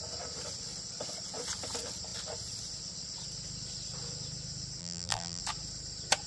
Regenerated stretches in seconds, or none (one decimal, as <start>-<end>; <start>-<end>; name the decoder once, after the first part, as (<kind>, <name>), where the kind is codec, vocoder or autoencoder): 4.8-5.4 (vocoder, BigVGAN v2)